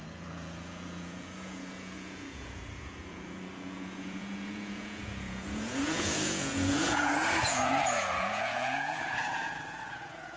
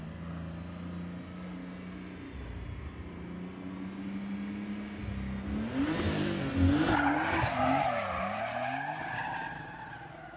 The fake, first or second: first